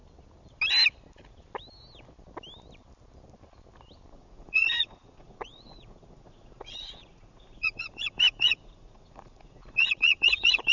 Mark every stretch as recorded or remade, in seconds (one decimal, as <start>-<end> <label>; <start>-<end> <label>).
0.0-4.1 recorded; 4.1-10.7 remade